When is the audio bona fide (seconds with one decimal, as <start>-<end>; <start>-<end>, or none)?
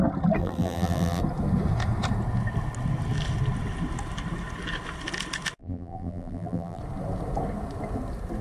0.0-0.4; 1.2-5.6; 6.8-8.4